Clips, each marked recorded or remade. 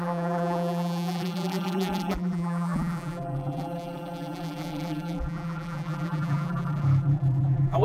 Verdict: remade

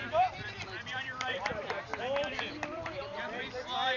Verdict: remade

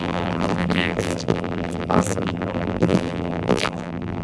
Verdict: remade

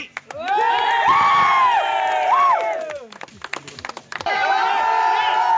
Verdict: recorded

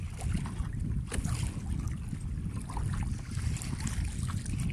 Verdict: recorded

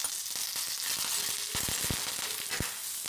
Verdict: recorded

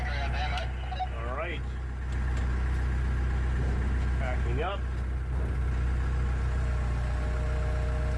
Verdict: recorded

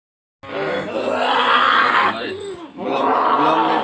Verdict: recorded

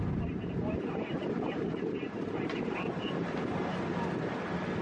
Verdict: recorded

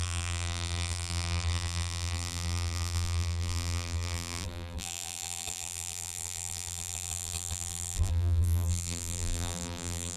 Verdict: remade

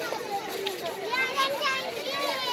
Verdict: recorded